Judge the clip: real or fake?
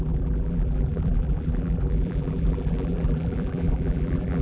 fake